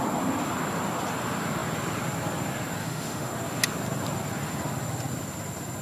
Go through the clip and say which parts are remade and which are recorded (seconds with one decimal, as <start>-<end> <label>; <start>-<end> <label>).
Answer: 0.0-2.8 recorded; 2.8-3.3 remade; 3.3-5.8 recorded